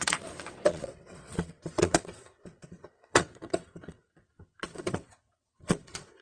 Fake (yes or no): yes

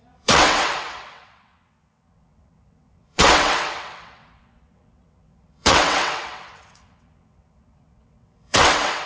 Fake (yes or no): yes